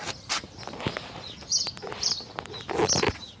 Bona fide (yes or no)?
yes